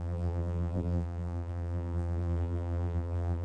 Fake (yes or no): yes